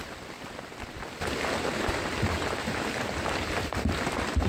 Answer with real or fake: real